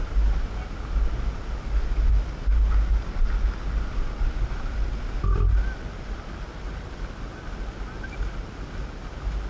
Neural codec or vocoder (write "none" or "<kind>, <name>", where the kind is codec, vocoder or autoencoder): none